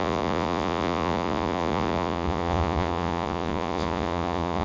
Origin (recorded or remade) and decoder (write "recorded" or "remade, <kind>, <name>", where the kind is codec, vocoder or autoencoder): remade, vocoder, Vocos